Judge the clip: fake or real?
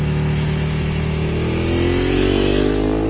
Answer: real